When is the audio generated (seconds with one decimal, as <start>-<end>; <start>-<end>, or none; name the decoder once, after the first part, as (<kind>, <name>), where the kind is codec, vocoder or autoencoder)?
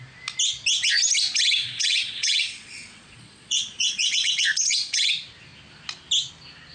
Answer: 1.6-5.1 (vocoder, Vocos)